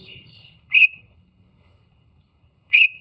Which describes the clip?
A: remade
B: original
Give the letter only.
A